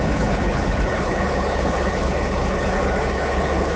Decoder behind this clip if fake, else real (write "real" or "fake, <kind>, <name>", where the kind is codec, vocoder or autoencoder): fake, codec, HILCodec